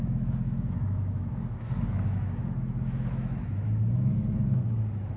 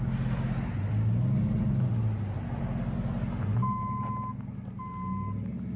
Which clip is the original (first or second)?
second